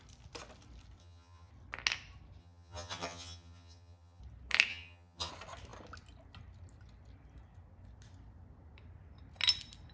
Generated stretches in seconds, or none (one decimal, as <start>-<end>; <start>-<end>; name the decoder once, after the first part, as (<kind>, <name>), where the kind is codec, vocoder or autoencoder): 1.0-1.5 (vocoder, HiFi-GAN); 2.4-4.2; 4.7-5.3